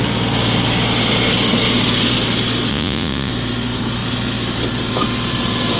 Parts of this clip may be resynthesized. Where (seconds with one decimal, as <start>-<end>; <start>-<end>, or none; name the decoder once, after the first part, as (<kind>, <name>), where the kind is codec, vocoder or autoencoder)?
2.7-3.3 (vocoder, Vocos)